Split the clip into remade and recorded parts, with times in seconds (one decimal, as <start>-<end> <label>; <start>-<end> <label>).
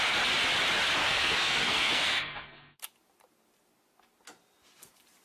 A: 0.0-1.0 recorded; 1.0-2.8 remade; 2.8-5.2 recorded